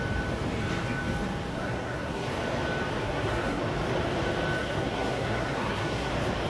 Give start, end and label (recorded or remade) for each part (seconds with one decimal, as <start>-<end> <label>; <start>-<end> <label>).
0.0-1.5 recorded; 1.5-2.3 remade; 2.3-3.0 recorded; 3.0-3.6 remade; 3.6-4.6 recorded; 4.6-6.1 remade; 6.1-6.5 recorded